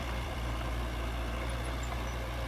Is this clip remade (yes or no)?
yes